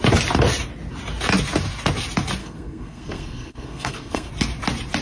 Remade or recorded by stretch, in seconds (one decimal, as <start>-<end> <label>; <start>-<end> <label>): 0.0-2.4 recorded; 2.4-4.3 remade; 4.3-5.0 recorded

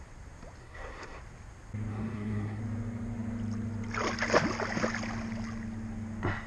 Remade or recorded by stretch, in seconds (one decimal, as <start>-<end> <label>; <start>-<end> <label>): 0.0-0.6 recorded; 0.6-1.2 remade; 1.2-1.9 recorded; 1.9-2.6 remade; 2.6-6.5 recorded

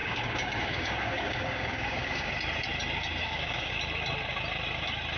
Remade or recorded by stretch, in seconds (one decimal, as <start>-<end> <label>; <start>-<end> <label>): 0.0-2.3 remade; 2.3-3.2 recorded; 3.2-3.7 remade; 3.7-5.2 recorded